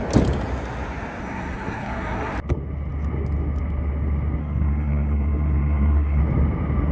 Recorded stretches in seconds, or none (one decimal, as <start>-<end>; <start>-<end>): 0.0-1.2; 2.3-4.4; 6.2-6.9